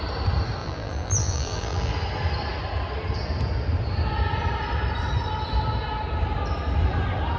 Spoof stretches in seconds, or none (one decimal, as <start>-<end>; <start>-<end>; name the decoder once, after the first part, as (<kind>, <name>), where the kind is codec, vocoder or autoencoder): 0.6-1.9 (vocoder, BigVGAN v2)